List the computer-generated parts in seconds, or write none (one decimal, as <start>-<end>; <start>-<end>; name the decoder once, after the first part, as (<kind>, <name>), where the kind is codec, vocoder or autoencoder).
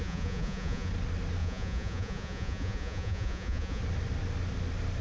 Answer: 0.0-0.9 (vocoder, Vocos); 1.4-3.8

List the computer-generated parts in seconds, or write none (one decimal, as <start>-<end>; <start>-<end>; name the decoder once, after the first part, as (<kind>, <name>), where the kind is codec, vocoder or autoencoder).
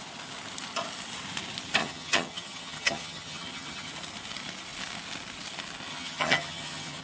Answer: 1.8-3.9 (vocoder, HiFi-GAN); 5.9-7.0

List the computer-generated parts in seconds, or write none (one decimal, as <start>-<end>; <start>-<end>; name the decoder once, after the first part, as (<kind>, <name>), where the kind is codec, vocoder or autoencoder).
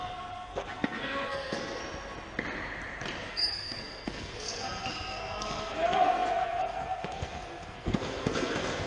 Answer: 0.0-1.8 (codec, SNAC); 3.3-8.9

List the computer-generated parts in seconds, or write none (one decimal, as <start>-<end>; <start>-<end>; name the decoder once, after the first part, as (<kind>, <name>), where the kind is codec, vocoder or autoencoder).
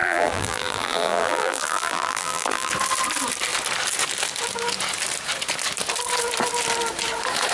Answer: 0.0-2.7 (vocoder, BigVGAN v2)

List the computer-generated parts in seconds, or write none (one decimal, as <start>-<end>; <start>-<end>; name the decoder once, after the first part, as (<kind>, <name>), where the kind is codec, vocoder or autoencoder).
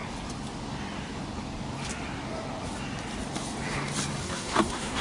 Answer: 4.2-5.0 (codec, SNAC)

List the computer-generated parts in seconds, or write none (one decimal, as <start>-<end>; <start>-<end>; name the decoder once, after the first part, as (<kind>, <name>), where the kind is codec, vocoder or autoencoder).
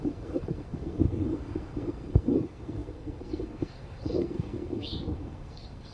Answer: 0.0-5.9 (codec, SNAC)